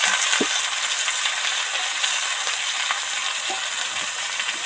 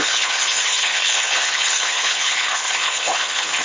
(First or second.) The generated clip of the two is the second